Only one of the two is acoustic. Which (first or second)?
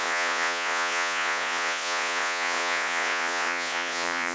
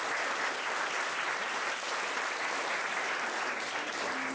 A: second